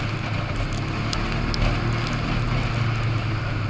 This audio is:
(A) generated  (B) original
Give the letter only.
B